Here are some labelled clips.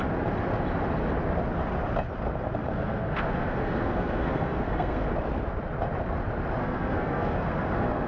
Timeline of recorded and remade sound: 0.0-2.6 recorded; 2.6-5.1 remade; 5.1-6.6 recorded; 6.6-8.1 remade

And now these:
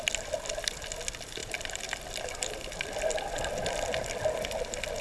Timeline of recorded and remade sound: 0.0-5.0 recorded

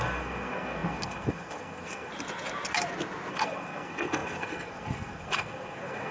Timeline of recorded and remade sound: 0.0-2.1 remade; 2.1-3.3 recorded; 3.3-6.1 remade

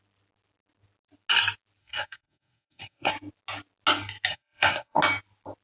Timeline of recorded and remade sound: 0.0-1.8 recorded; 1.8-3.1 remade; 3.1-4.3 recorded; 4.3-5.0 remade; 5.0-5.6 recorded

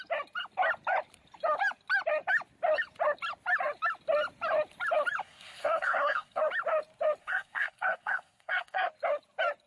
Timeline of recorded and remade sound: 0.0-5.2 recorded; 5.2-6.4 remade; 6.4-7.2 recorded; 7.2-8.9 remade; 8.9-9.7 recorded